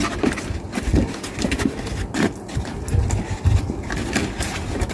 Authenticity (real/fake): real